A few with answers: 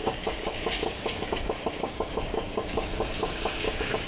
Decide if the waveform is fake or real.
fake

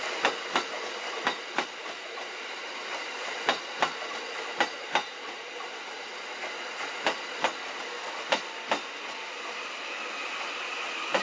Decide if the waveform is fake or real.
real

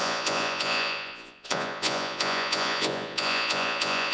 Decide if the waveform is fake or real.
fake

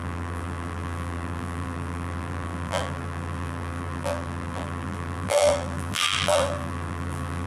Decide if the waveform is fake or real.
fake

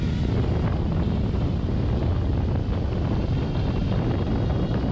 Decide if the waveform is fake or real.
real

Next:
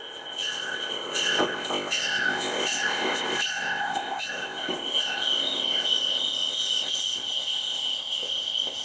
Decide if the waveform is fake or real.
fake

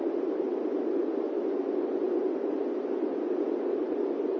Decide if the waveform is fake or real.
real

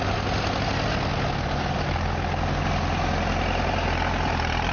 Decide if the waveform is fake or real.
real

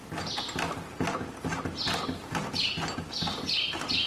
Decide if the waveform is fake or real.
real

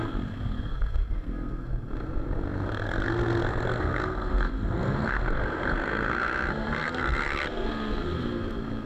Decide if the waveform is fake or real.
fake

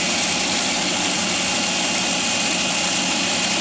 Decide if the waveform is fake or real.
real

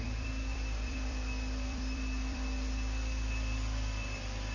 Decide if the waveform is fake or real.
fake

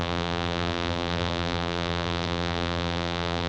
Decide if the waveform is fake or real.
fake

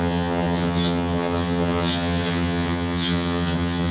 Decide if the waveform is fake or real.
fake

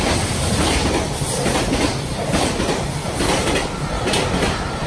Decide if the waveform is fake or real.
real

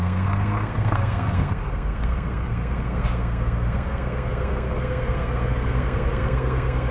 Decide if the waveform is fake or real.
fake